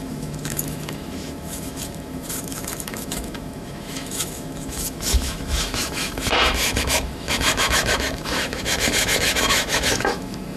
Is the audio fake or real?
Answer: fake